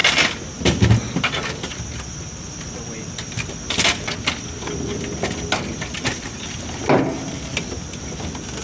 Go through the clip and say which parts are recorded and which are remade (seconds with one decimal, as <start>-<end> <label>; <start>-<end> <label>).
0.0-8.6 recorded